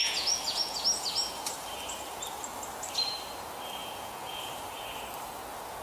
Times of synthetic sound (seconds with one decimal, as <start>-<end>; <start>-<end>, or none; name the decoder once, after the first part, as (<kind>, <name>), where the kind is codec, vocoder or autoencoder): 0.0-0.8 (vocoder, Vocos); 3.8-4.5